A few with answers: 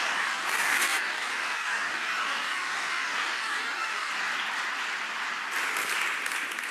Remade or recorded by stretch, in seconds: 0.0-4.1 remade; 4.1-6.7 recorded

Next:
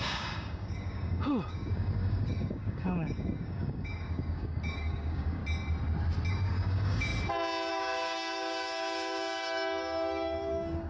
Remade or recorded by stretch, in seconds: 0.0-5.4 remade; 5.4-6.3 recorded; 6.3-7.1 remade; 7.1-7.7 recorded; 7.7-10.9 remade

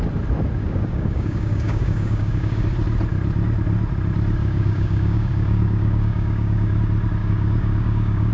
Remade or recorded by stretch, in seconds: 0.0-0.6 recorded; 0.6-2.6 remade; 2.6-4.4 recorded; 4.4-6.8 remade; 6.8-7.2 recorded; 7.2-8.3 remade

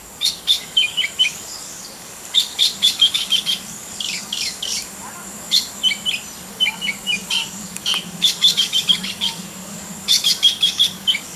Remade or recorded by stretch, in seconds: 0.0-5.8 remade; 5.8-6.5 recorded; 6.5-11.4 remade